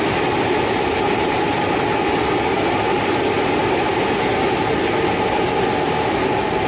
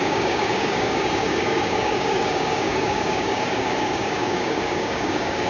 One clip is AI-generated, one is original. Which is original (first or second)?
first